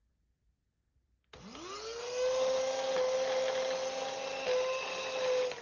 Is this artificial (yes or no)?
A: no